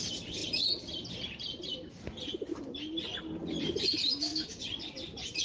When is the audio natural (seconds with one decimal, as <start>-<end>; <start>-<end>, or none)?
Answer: 0.0-5.4

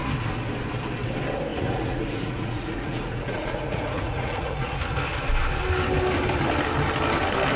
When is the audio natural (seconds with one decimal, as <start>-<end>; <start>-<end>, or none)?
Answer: 0.0-1.5; 4.8-7.6